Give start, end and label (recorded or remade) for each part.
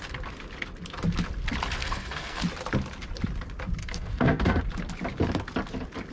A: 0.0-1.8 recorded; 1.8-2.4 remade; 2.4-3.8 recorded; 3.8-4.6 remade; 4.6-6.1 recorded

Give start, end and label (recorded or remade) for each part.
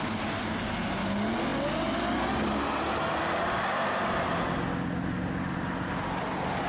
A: 0.0-6.7 recorded